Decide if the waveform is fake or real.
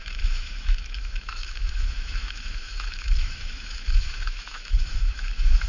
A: fake